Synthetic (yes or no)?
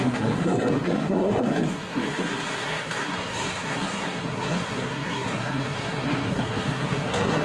yes